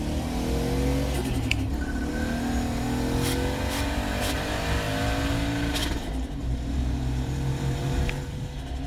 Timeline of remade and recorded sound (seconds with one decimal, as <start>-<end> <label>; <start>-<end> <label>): 0.0-5.8 recorded; 5.8-8.1 remade; 8.1-8.9 recorded